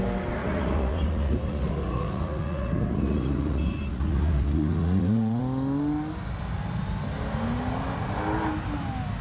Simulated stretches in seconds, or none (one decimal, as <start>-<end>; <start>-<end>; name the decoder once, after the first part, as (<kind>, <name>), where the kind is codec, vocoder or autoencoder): 0.4-5.4 (vocoder, Vocos)